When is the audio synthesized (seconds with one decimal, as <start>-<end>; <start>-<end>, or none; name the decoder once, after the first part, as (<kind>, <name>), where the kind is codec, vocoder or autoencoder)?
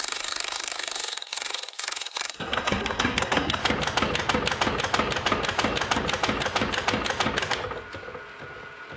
0.0-3.6 (codec, SNAC)